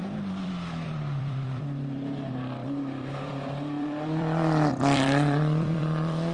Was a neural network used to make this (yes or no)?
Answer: yes